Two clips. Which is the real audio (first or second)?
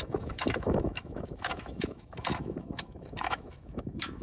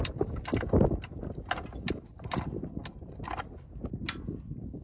second